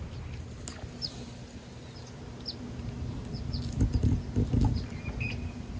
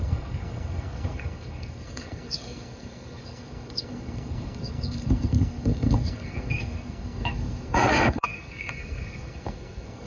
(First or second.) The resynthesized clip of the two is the second